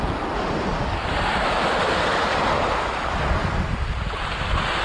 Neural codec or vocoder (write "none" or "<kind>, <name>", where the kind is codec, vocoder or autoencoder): none